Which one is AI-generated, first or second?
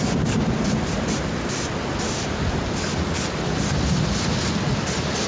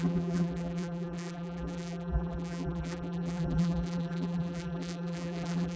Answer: second